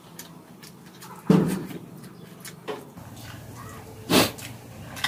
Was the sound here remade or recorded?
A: recorded